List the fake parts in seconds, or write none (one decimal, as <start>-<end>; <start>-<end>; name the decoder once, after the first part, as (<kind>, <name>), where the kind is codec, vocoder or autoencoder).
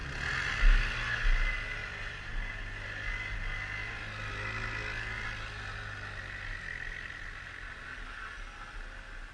1.8-2.3 (vocoder, BigVGAN v2)